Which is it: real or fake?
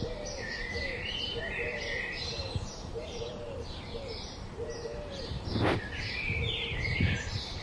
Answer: fake